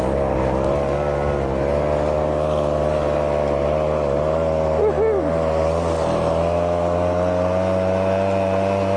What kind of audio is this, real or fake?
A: real